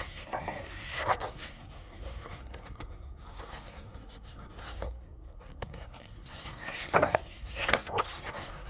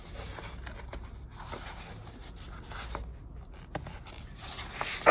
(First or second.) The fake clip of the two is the first